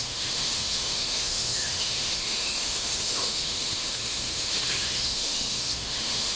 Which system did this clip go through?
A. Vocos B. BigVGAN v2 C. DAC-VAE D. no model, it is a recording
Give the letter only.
C